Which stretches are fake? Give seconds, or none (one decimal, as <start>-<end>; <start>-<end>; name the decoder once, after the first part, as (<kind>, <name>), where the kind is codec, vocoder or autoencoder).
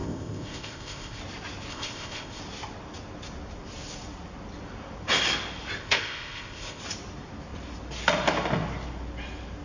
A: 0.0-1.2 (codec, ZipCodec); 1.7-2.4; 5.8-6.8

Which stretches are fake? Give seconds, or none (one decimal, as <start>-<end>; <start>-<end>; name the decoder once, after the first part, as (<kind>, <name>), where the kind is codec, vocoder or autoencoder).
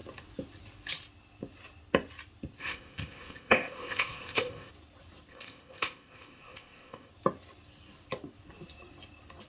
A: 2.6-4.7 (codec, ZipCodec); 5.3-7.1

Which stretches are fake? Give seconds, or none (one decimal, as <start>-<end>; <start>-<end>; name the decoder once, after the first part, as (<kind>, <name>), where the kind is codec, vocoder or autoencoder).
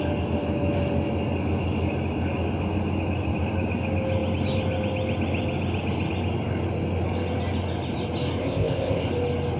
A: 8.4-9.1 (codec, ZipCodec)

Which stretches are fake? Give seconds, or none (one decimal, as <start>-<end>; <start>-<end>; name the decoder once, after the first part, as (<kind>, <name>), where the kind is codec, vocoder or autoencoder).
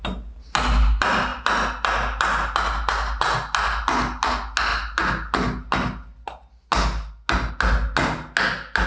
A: none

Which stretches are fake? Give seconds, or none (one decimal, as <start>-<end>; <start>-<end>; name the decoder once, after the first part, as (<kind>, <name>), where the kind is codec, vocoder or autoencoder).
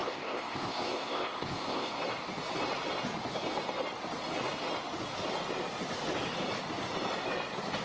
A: 0.0-2.0 (codec, ZipCodec)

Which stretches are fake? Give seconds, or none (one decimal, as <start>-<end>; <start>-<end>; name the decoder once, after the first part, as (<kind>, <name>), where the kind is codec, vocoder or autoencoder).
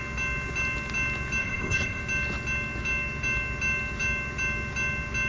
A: 1.4-2.0 (codec, ZipCodec)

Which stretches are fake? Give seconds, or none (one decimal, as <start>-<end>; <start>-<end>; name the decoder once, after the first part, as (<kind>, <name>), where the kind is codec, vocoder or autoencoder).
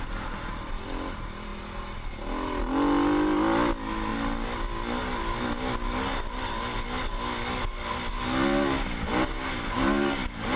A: none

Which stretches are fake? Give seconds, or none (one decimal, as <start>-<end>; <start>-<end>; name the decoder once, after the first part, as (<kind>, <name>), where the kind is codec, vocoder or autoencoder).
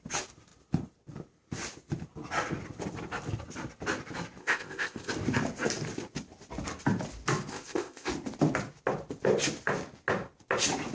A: 4.4-5.1 (codec, ZipCodec); 7.5-8.1